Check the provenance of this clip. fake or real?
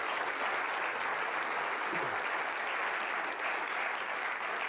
real